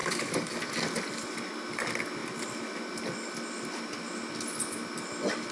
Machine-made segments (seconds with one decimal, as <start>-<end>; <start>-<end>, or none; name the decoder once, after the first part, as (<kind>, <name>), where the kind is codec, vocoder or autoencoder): 0.0-0.6 (codec, DAC)